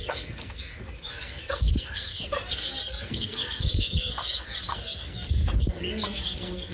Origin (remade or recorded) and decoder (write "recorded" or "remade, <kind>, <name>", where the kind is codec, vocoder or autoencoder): remade, codec, SNAC